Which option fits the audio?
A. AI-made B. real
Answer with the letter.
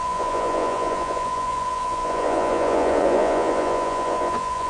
A